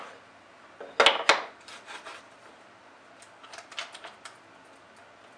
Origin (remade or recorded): recorded